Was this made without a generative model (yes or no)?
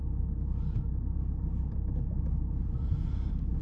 no